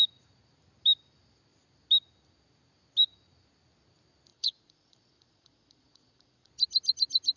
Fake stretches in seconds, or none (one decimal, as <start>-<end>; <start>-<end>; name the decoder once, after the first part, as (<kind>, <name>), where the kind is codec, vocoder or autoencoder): 4.3-6.5 (vocoder, Vocos)